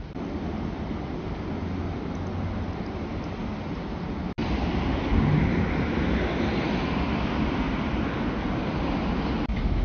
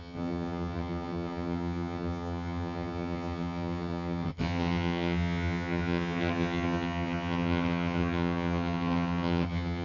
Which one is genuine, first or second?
first